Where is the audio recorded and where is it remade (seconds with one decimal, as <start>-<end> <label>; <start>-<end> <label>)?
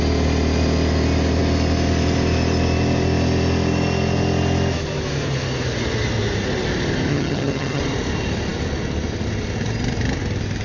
0.0-7.1 recorded; 7.1-7.8 remade; 7.8-10.6 recorded